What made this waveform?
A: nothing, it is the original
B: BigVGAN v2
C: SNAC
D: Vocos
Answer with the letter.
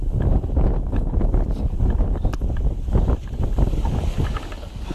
A